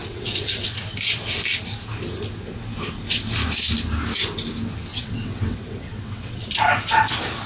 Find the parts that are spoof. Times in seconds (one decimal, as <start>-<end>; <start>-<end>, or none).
0.0-0.8; 4.9-6.5

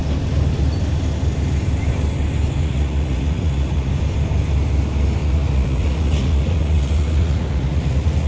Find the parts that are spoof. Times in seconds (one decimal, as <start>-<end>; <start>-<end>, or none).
2.6-3.9; 5.2-8.3

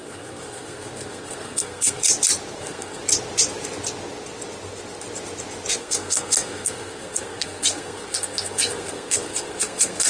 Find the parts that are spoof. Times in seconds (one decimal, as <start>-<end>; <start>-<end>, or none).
0.0-2.0; 2.6-3.0; 5.8-10.1

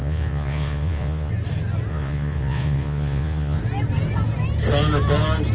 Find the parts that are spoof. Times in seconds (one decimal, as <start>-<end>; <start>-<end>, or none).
0.0-1.3; 1.9-3.6